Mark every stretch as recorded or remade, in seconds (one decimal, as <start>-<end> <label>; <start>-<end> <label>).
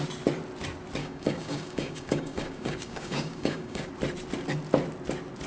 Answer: 0.0-1.0 recorded; 1.0-3.9 remade; 3.9-5.5 recorded